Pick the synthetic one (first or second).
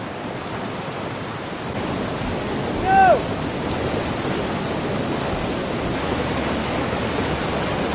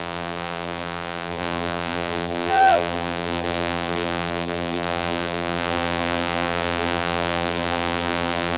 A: second